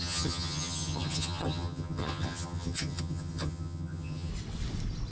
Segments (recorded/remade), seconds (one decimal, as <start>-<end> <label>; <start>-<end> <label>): 0.0-4.3 remade; 4.3-5.1 recorded